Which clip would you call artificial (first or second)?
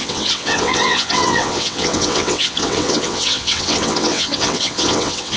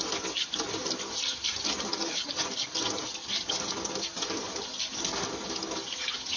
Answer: first